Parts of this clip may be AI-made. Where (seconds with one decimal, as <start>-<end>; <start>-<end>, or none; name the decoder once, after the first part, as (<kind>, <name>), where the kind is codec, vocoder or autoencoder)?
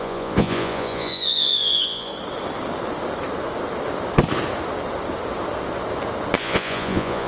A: 0.0-2.1 (vocoder, Vocos); 6.4-7.3